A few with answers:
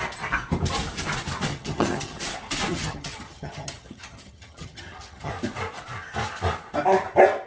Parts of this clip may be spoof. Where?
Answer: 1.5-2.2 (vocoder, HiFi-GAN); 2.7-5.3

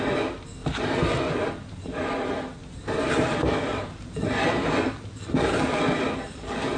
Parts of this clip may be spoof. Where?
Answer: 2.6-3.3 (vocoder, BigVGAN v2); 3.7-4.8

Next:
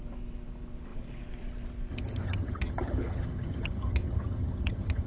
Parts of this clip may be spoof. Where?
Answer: 1.9-5.1 (vocoder, HiFi-GAN)